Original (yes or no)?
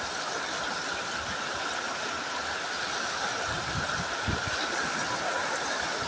yes